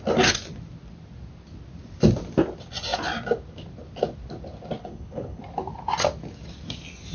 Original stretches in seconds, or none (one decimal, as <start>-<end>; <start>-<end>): 0.0-4.8; 5.4-7.1